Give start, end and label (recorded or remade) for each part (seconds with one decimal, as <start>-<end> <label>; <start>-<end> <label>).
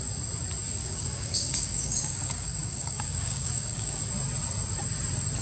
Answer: 0.0-0.8 recorded; 0.8-4.0 remade; 4.0-5.4 recorded